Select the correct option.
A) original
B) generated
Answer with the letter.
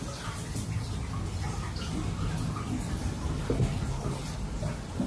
A